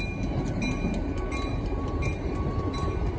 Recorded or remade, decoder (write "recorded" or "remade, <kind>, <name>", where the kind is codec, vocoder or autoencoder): remade, vocoder, BigVGAN v2